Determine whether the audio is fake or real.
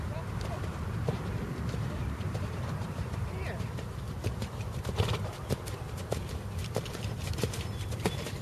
fake